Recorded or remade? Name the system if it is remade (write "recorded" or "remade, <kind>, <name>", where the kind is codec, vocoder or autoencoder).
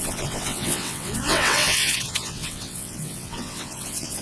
remade, vocoder, WaveNeXt